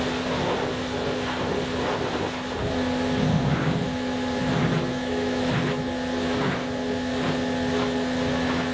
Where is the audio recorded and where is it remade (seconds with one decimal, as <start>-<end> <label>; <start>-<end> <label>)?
0.0-4.9 recorded; 4.9-5.5 remade; 5.5-8.7 recorded